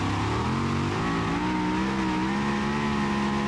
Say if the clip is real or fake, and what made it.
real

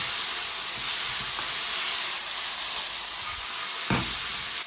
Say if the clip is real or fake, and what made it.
real